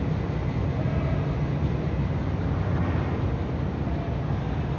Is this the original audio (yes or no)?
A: yes